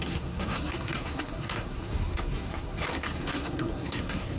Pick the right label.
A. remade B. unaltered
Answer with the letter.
A